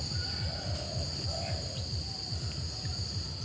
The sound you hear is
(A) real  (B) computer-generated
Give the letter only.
A